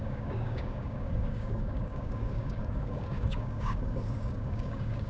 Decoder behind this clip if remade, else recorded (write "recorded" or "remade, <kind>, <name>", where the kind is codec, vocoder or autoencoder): remade, codec, DAC